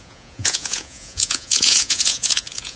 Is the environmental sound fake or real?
fake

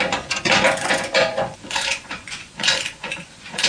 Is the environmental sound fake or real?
fake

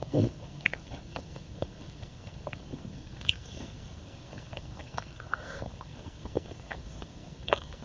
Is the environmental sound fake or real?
fake